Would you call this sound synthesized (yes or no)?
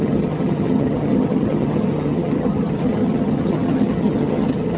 yes